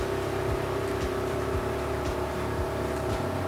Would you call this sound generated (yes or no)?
no